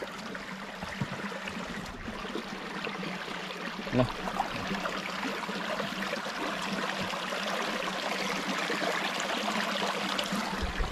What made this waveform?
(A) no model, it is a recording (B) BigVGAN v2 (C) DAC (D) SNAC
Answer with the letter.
A